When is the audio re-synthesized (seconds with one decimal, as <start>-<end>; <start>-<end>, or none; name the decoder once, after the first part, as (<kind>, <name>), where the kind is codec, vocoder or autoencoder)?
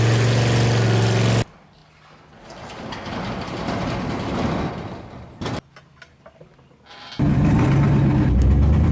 none